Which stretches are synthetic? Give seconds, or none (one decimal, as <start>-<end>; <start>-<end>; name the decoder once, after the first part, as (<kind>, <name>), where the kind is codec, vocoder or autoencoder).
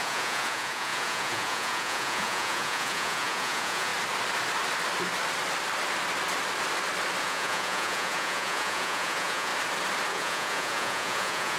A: 0.0-3.9 (vocoder, Vocos); 7.2-9.5; 10.1-11.6